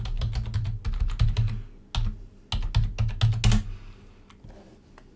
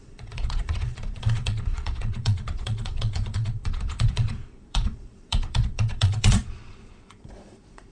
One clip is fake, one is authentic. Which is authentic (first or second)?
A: first